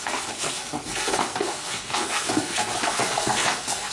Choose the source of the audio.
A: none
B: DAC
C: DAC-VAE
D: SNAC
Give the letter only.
D